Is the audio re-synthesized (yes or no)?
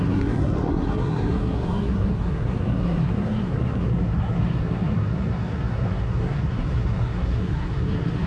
yes